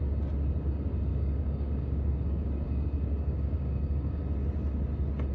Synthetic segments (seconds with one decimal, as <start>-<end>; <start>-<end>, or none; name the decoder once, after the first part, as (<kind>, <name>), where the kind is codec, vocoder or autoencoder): 1.1-4.2 (codec, DAC)